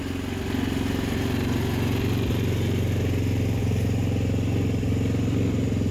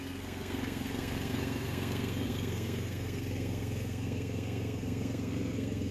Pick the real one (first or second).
first